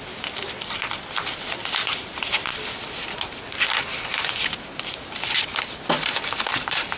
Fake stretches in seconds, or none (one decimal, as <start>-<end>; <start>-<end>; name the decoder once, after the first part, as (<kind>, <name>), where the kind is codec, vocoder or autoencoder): 0.0-2.5 (vocoder, BigVGAN v2)